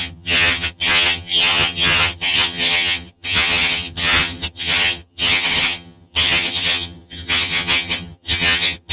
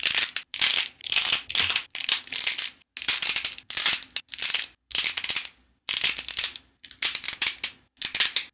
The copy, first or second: first